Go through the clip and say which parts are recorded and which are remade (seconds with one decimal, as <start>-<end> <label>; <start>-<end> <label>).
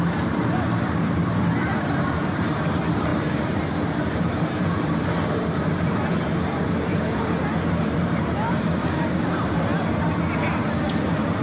0.0-7.5 remade; 7.5-8.0 recorded; 8.0-9.7 remade; 9.7-10.8 recorded; 10.8-11.4 remade